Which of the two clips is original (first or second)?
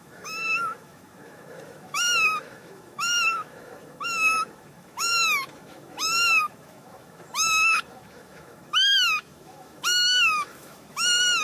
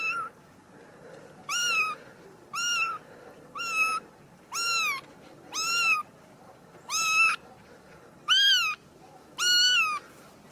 second